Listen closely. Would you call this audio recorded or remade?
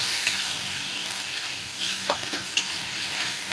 remade